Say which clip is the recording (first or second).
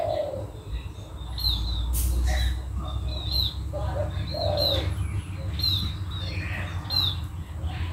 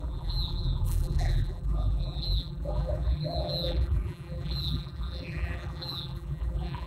first